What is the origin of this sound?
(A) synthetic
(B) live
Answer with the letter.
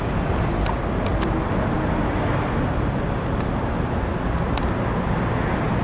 B